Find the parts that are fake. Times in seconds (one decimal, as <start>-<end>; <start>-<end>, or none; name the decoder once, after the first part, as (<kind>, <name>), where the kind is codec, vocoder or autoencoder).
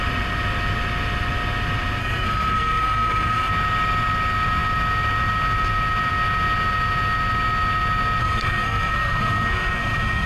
2.0-3.5 (codec, SNAC); 8.2-10.3